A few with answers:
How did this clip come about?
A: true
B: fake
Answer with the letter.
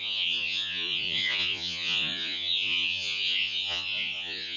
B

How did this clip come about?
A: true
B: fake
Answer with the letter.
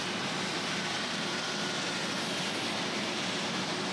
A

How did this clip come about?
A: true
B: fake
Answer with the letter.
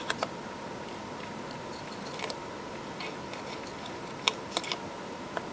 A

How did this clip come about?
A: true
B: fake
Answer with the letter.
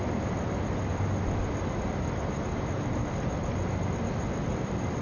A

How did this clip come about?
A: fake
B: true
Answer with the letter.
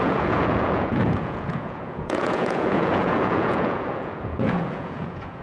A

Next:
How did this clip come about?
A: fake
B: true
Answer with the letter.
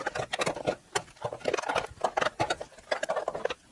B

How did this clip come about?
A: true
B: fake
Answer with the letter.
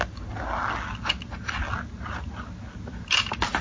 A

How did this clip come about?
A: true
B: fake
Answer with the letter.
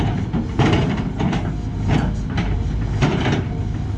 A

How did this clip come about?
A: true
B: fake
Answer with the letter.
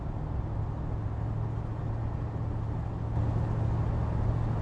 A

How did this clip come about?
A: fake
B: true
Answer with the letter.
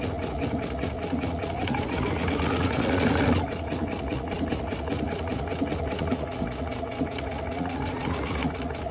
A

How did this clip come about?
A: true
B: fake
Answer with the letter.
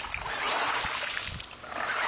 A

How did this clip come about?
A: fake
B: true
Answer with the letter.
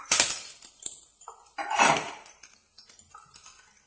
B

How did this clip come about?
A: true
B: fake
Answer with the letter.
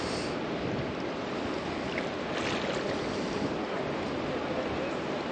A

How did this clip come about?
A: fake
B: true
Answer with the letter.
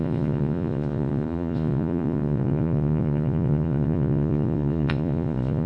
A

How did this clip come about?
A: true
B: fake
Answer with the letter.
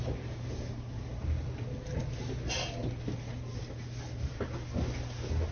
A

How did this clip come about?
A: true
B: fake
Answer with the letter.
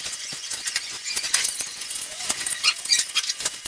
B